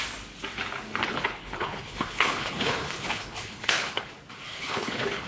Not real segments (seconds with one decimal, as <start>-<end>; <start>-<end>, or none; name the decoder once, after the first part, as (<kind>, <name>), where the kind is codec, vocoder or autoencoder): 1.1-4.1 (codec, HILCodec); 4.5-5.3